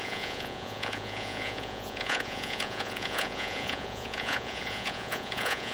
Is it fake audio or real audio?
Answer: fake